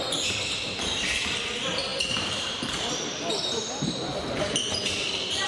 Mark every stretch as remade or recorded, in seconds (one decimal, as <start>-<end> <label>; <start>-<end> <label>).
0.0-5.5 remade